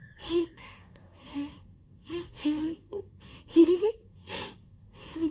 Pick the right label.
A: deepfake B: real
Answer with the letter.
A